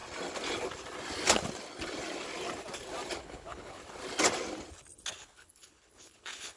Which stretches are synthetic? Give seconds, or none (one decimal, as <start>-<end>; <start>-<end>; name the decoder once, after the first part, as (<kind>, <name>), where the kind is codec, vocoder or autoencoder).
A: 3.2-3.8 (codec, HILCodec); 5.1-6.6